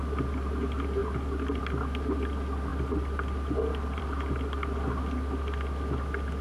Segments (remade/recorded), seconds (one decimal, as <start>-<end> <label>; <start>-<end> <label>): 0.0-6.4 recorded